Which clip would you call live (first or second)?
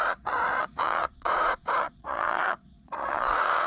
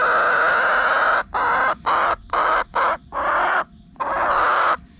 second